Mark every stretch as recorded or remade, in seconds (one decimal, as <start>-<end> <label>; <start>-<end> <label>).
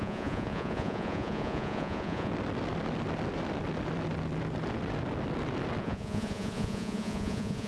0.0-2.3 remade; 2.3-5.8 recorded; 5.8-7.7 remade